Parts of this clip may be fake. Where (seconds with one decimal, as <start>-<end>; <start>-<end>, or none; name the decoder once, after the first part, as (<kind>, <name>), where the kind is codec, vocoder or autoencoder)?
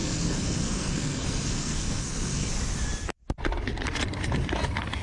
0.0-2.5 (codec, SNAC)